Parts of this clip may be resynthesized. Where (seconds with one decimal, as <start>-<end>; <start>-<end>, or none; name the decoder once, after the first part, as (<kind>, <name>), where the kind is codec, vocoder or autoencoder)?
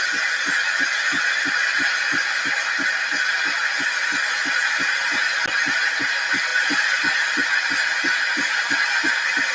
none